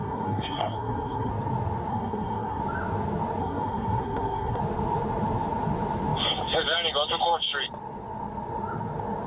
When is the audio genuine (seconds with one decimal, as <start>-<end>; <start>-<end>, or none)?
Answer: 1.3-1.9; 2.6-3.4; 4.6-9.3